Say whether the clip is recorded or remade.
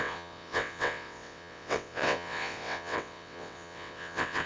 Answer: remade